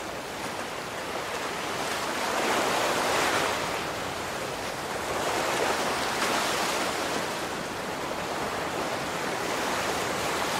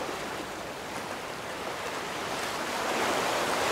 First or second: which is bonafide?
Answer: second